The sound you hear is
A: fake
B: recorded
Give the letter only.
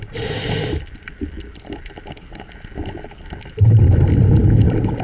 B